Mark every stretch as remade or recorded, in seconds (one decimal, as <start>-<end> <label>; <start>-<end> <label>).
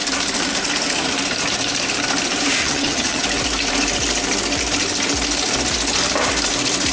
0.0-2.6 recorded; 2.6-3.2 remade; 3.2-6.9 recorded